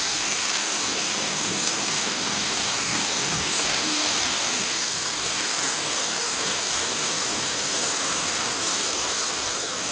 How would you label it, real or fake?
fake